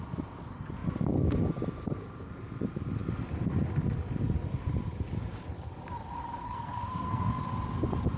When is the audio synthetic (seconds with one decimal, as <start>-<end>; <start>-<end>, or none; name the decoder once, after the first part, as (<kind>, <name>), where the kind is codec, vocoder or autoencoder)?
6.4-7.4 (codec, SNAC)